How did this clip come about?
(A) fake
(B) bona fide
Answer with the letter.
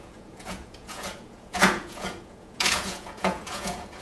A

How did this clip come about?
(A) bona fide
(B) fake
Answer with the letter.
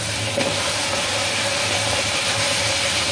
A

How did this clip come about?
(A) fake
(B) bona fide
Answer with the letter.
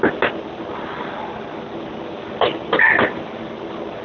B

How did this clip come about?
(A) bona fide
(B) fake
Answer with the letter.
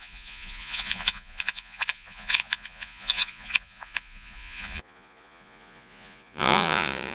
B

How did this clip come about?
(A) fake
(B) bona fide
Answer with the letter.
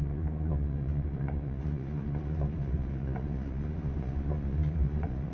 A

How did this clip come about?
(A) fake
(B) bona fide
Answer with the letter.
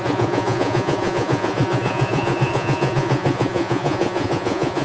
A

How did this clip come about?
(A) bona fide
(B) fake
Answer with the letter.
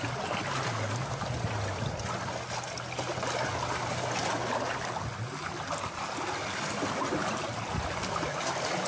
A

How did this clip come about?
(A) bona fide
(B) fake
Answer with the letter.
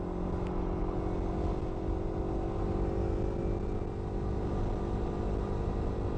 A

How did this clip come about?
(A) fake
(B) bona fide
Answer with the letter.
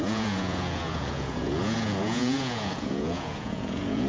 A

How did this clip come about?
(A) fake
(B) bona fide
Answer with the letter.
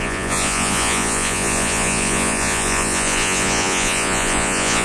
A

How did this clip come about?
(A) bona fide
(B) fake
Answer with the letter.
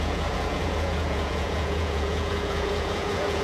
B